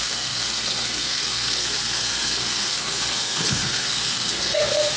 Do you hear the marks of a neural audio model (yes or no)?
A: yes